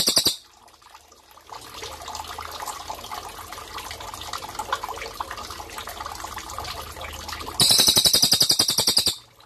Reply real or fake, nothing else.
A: real